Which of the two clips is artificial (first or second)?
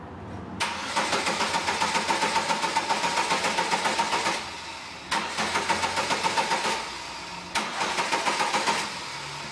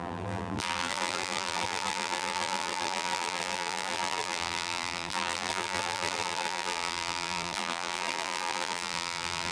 second